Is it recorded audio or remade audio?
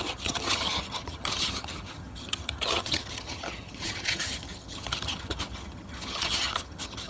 remade